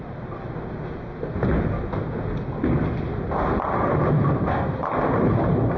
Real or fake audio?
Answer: real